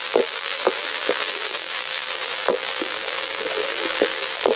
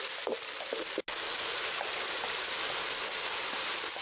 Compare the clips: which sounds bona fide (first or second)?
second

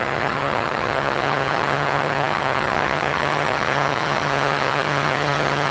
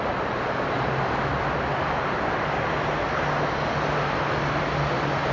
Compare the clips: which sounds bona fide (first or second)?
second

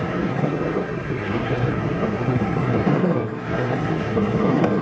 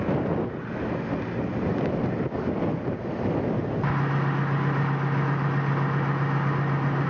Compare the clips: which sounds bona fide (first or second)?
second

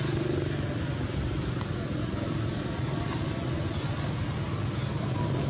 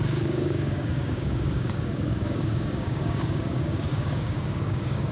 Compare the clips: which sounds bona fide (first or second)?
first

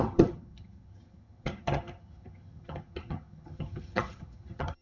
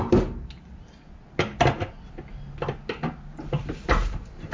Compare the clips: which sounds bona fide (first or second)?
second